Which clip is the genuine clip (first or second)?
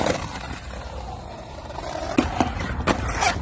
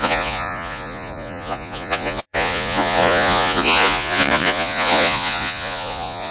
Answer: first